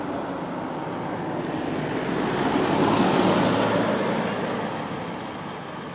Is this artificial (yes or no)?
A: no